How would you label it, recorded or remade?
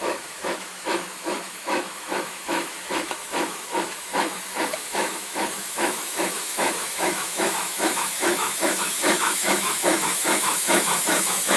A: remade